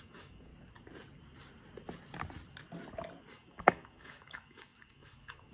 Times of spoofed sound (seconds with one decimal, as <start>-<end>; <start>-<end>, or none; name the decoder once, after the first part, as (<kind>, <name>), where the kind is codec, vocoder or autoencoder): 0.0-0.5 (autoencoder, DAC-VAE); 3.3-5.5

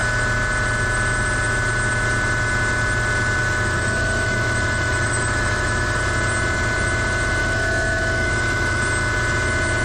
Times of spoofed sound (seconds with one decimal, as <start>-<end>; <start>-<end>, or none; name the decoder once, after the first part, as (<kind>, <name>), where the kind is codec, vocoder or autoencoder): 3.4-6.0 (autoencoder, DAC-VAE); 7.4-8.8

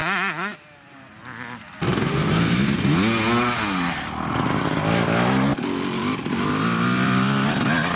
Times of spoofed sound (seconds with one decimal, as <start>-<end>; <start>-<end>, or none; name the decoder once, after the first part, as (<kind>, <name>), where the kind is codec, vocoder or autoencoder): 5.5-8.0 (vocoder, BigVGAN v2)

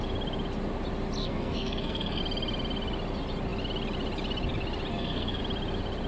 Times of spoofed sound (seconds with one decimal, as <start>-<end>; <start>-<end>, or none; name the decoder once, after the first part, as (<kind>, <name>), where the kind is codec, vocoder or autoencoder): 1.2-2.2 (codec, SNAC); 4.9-5.4

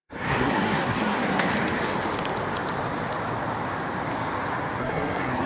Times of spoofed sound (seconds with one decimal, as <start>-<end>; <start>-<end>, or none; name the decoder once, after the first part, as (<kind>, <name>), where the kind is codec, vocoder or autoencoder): 0.0-1.5 (codec, SNAC); 4.8-5.5